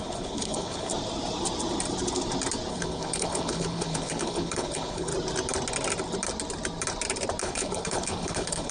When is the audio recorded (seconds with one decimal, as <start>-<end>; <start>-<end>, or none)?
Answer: 0.9-2.7; 5.1-7.4

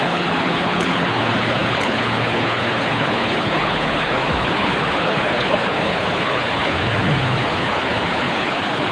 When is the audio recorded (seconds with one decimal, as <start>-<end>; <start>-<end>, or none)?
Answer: none

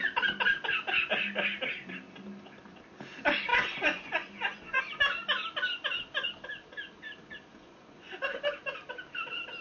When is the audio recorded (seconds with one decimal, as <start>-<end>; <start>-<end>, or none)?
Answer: 0.0-3.5; 4.8-7.5; 8.2-9.6